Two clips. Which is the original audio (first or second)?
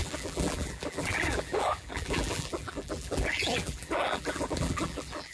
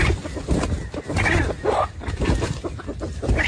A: second